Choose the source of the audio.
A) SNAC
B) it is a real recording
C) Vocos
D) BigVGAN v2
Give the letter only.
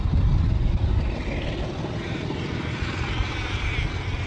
B